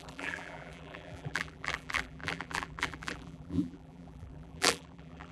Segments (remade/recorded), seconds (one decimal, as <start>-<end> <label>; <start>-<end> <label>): 0.0-5.3 remade